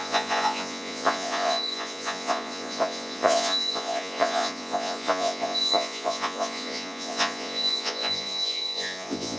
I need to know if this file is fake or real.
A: fake